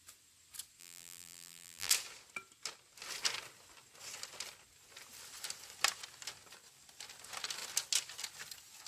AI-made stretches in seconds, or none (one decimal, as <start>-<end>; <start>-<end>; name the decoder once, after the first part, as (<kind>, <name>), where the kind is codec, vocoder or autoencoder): 0.8-1.9 (vocoder, BigVGAN v2)